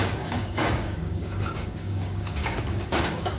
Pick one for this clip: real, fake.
fake